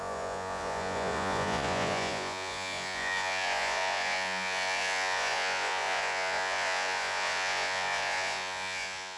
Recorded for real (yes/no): no